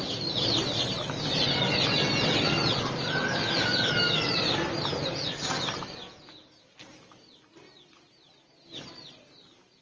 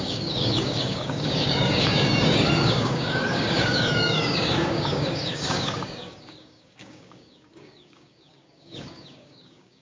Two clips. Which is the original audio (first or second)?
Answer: first